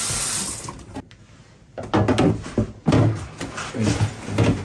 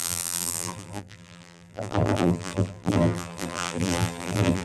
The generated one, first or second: second